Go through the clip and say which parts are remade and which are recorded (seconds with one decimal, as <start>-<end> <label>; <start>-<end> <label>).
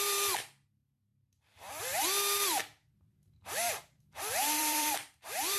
0.0-1.1 remade; 1.1-4.0 recorded; 4.0-5.6 remade